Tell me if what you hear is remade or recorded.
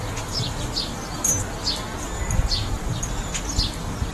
recorded